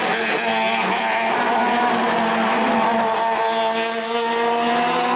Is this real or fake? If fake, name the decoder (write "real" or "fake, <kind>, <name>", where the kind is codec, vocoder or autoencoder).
real